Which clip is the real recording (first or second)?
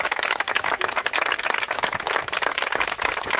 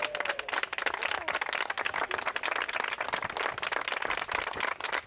second